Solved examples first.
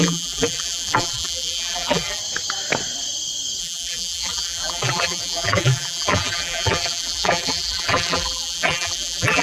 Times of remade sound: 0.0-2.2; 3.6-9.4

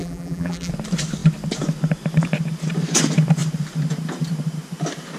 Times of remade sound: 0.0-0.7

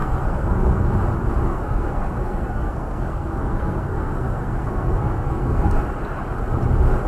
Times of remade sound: 0.0-0.9; 1.5-5.8

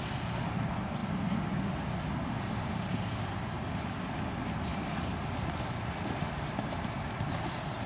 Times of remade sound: none